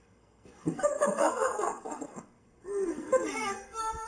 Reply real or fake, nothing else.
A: fake